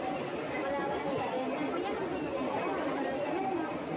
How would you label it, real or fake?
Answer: real